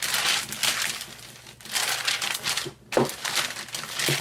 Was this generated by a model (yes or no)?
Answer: no